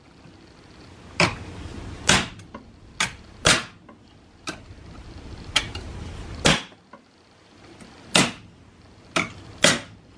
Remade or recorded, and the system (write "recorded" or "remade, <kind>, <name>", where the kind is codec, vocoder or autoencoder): recorded